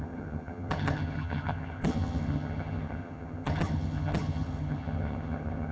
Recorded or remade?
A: remade